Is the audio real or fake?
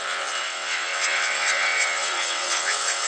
fake